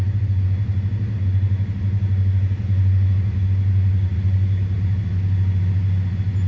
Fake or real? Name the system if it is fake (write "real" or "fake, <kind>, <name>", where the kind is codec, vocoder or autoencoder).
real